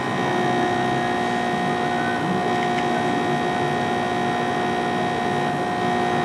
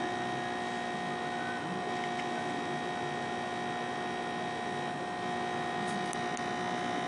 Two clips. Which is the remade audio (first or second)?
second